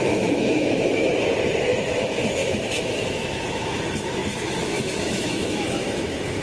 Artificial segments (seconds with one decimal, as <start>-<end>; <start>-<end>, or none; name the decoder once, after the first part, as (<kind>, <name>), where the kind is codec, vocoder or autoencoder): 0.0-1.1 (autoencoder, DAC-VAE); 1.6-6.4